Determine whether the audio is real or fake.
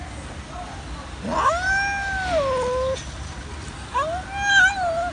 real